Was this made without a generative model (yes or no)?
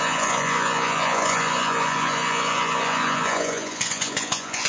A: no